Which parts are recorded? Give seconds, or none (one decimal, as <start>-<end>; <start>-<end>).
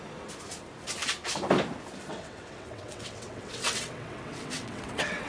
0.0-2.1